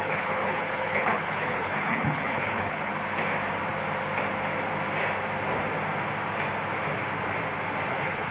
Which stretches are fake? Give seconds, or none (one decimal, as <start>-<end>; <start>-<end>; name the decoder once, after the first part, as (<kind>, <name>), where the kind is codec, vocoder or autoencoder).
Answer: 0.0-2.9 (codec, HILCodec); 7.9-8.3